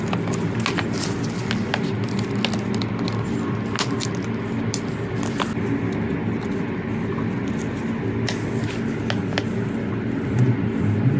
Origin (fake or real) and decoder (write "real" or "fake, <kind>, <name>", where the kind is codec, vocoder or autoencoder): real